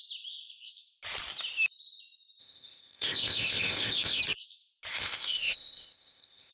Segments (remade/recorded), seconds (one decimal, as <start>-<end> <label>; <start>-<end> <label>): 0.0-2.4 recorded; 2.4-4.2 remade; 4.2-4.9 recorded; 4.9-6.5 remade